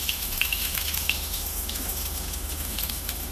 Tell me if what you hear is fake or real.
fake